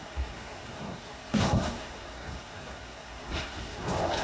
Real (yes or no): no